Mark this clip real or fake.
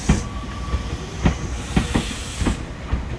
real